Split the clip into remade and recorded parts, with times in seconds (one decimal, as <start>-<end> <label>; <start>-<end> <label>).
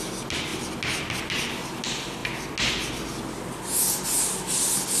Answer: 0.0-5.0 recorded